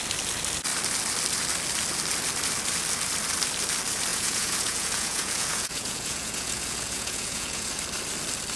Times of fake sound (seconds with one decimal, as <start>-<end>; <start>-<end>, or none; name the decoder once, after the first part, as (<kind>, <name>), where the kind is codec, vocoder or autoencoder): 4.1-7.8 (vocoder, Vocos)